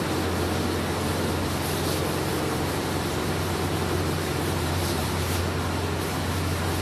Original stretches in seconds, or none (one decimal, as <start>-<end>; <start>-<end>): 0.0-2.3; 5.4-6.8